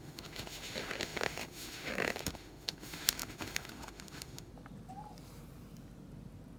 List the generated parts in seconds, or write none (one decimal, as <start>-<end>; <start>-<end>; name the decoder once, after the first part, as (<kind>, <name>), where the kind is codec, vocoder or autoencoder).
0.0-4.5 (autoencoder, DAC-VAE)